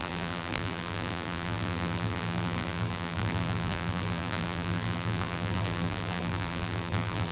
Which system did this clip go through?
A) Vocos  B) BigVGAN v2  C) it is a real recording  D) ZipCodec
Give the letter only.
B